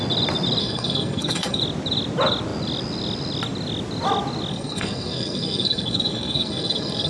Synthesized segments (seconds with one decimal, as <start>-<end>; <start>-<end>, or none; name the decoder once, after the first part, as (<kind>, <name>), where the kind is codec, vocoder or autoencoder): 0.6-1.6 (codec, SNAC); 4.5-7.1